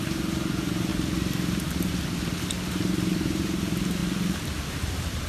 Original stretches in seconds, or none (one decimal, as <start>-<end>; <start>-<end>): 0.9-2.7; 4.0-4.7